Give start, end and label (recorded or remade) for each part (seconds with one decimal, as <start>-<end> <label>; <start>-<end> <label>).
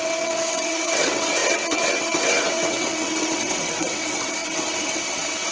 0.0-5.5 remade